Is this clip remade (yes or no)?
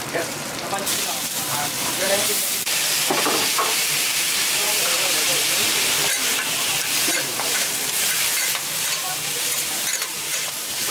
yes